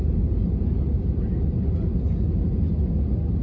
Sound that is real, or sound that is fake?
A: real